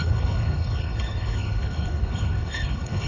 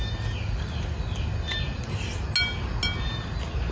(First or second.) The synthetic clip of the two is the first